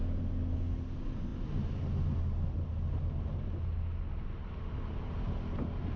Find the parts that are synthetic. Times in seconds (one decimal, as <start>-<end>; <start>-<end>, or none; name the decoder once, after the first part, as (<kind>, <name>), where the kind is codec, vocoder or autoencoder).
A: none